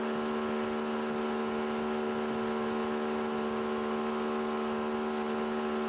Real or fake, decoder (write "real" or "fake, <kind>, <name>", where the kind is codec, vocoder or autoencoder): real